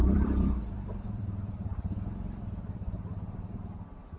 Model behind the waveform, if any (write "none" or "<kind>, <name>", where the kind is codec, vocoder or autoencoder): vocoder, BigVGAN v2